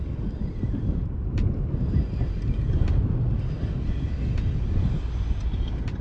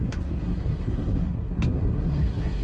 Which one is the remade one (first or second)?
second